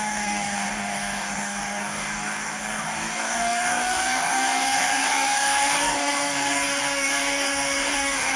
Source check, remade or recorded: remade